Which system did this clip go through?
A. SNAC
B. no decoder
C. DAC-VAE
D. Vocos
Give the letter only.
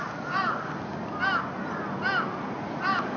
B